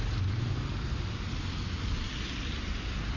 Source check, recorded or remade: recorded